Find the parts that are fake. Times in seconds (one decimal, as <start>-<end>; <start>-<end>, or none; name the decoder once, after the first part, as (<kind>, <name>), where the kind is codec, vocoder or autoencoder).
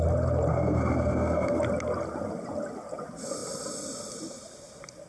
0.5-1.6 (codec, SNAC)